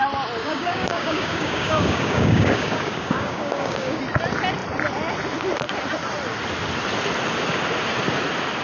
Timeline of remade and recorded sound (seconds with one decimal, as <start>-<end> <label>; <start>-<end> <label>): 0.0-0.4 recorded; 0.4-4.0 remade; 4.0-8.6 recorded